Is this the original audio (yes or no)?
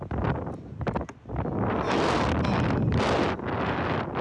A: yes